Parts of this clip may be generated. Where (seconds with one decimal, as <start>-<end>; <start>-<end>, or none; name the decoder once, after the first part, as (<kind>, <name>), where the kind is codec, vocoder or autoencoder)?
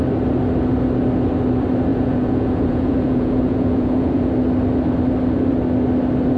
1.9-4.3 (vocoder, Vocos)